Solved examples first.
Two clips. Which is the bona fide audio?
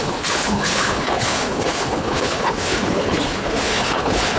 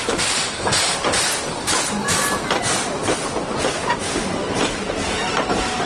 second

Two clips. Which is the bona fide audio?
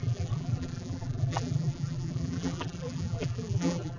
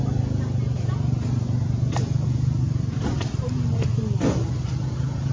second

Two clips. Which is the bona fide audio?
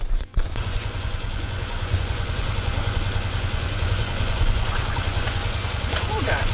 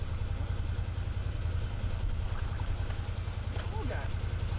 second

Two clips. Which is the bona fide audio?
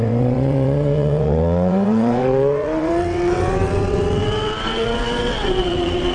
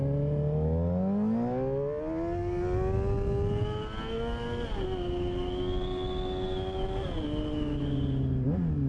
second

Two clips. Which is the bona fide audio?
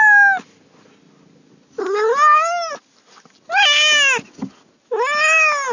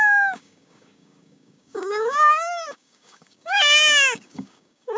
first